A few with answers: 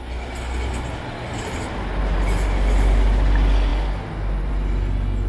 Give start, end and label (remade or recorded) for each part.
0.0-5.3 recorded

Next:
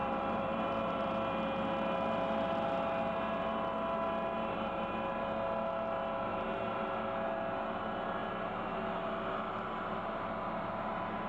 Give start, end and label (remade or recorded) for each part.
0.0-1.1 remade; 1.1-6.3 recorded; 6.3-6.8 remade; 6.8-11.3 recorded